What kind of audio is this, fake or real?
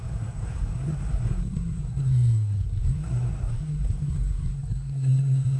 fake